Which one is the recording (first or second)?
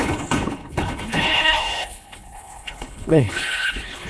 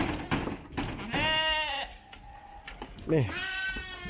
second